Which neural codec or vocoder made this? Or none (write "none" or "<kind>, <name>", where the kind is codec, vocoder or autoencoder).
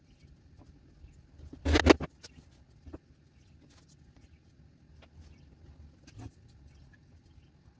none